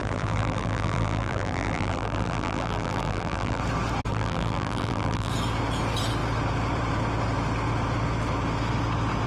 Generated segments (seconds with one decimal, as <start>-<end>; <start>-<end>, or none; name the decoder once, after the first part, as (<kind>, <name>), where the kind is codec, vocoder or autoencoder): 0.0-3.6 (vocoder, BigVGAN v2); 4.1-5.3